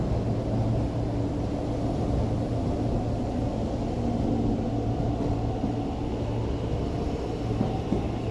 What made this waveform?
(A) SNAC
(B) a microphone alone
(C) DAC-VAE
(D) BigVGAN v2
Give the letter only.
B